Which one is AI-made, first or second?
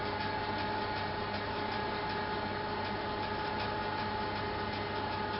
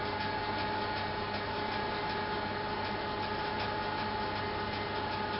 first